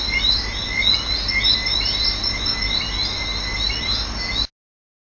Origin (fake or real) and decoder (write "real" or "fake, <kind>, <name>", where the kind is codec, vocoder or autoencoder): real